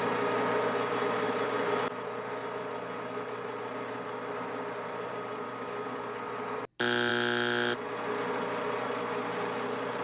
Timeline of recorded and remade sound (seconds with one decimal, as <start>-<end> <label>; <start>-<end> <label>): 0.0-10.0 recorded

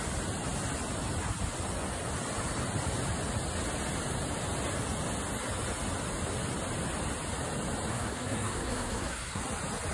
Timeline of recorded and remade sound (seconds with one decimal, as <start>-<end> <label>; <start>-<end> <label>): 0.0-7.9 recorded; 7.9-9.4 remade; 9.4-9.9 recorded